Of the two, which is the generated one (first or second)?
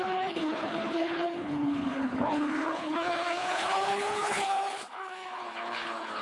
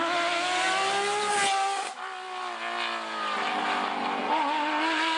first